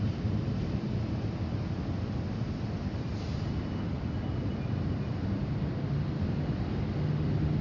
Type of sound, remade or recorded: recorded